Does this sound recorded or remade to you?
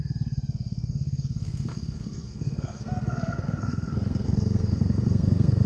remade